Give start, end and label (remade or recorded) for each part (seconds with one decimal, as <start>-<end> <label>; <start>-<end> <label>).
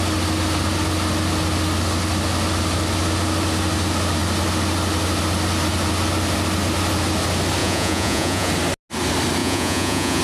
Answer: 0.0-7.6 recorded; 7.6-8.5 remade; 8.5-9.4 recorded; 9.4-10.2 remade